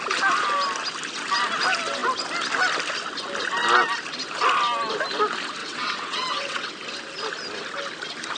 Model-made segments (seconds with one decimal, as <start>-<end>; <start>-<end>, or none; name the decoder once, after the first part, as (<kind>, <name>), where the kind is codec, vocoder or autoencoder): 5.6-6.7 (vocoder, WaveNeXt)